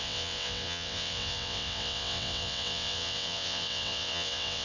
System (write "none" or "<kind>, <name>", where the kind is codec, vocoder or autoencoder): vocoder, WaveNeXt